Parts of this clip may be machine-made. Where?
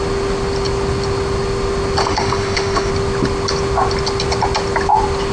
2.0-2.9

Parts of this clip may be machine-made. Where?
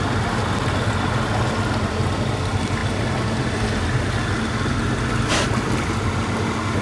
none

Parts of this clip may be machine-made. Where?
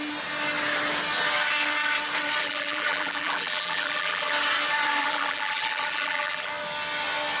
2.4-4.3; 5.0-6.5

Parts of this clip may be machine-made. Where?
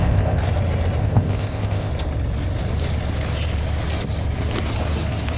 0.0-0.4; 1.0-1.9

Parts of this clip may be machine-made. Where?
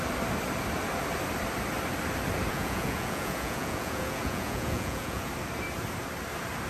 2.5-5.3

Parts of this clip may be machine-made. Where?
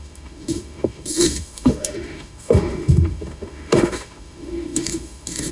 0.0-5.5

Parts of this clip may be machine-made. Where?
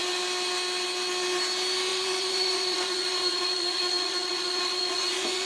1.9-5.5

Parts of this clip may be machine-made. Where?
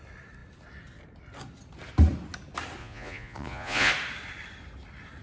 2.8-3.9